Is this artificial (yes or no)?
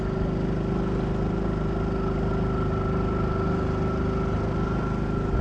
no